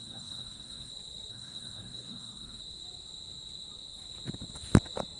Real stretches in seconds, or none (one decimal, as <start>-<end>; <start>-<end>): 0.9-1.3; 2.6-5.2